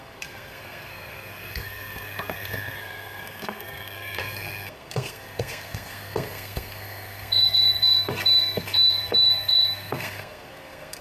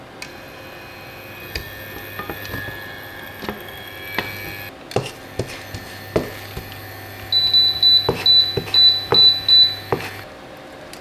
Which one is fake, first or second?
first